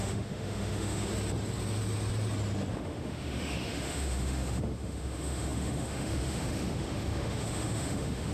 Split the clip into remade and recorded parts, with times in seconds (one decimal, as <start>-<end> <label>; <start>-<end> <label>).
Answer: 0.0-1.1 remade; 1.1-2.7 recorded; 2.7-8.3 remade